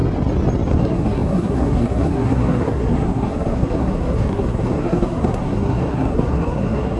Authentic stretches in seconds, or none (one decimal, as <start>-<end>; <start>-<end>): 0.0-0.7